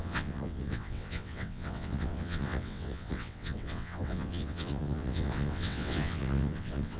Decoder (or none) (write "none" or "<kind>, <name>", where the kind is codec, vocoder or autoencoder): vocoder, WaveNeXt